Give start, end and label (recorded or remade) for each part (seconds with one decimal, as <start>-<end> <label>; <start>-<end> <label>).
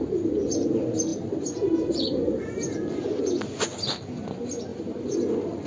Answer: 0.0-5.7 recorded